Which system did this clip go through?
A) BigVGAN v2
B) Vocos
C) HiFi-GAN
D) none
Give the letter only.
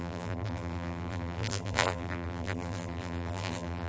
A